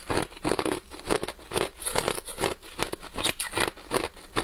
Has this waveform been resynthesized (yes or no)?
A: no